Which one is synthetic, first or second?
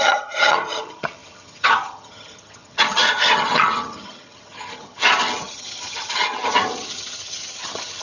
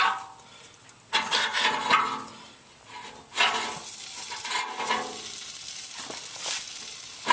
first